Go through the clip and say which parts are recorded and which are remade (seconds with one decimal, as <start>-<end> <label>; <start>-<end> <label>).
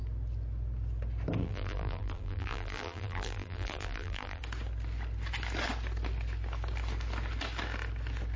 0.0-1.4 recorded; 1.4-4.4 remade; 4.4-8.4 recorded